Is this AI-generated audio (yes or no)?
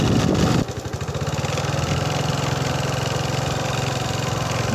no